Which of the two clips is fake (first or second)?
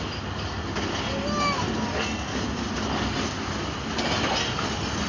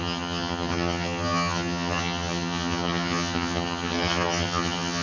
second